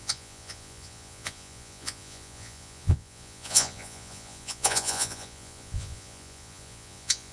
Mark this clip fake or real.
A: fake